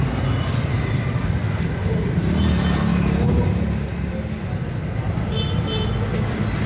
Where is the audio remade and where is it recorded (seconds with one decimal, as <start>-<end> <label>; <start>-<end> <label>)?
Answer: 0.0-2.9 recorded; 2.9-3.5 remade; 3.5-6.7 recorded